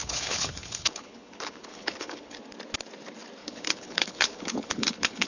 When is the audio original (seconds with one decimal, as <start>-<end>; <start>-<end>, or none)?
2.4-3.4